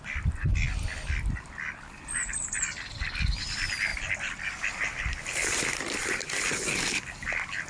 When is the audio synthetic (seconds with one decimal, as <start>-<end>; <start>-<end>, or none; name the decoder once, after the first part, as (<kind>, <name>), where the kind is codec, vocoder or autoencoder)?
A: none